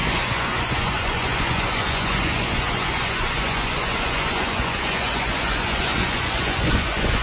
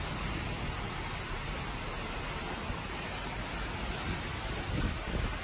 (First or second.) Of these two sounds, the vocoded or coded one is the first